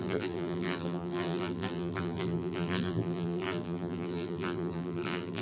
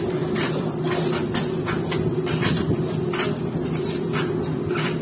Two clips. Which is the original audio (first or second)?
second